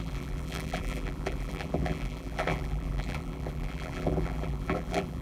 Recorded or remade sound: remade